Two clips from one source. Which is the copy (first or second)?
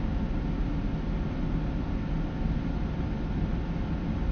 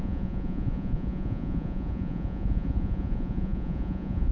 second